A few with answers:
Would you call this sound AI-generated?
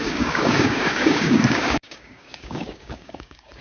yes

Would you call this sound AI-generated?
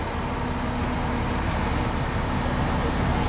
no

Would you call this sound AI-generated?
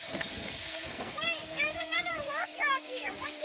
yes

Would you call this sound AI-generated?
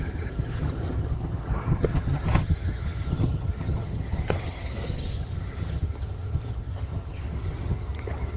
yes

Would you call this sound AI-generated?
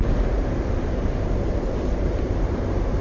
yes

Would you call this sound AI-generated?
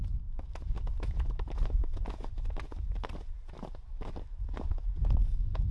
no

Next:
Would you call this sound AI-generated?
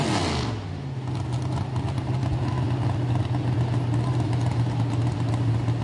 no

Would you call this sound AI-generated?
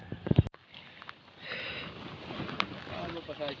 no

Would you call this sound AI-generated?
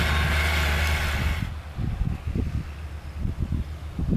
no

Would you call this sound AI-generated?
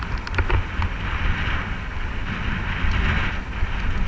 no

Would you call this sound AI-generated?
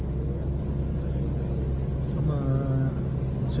no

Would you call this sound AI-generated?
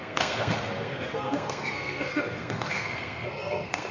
yes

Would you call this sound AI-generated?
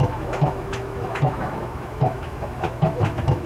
yes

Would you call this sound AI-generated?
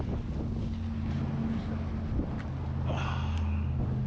no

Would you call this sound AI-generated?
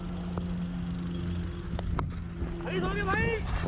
no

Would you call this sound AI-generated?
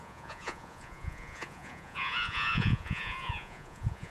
yes